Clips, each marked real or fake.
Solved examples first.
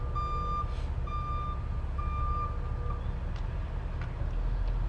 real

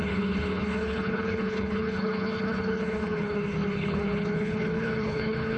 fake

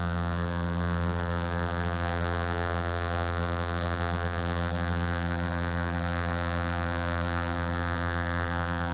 fake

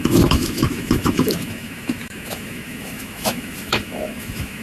fake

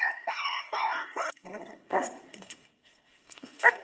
fake